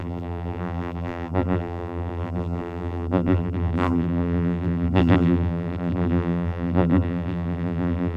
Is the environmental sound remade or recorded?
remade